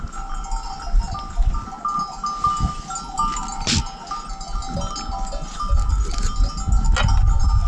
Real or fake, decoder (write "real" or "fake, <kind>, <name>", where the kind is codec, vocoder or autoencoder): real